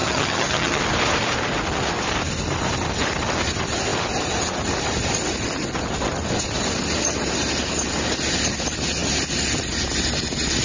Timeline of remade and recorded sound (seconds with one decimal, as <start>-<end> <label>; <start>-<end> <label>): 0.0-0.8 remade; 0.8-10.6 recorded